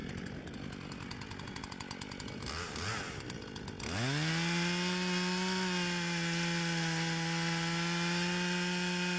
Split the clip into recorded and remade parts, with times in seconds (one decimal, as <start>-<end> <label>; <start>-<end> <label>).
0.0-9.2 recorded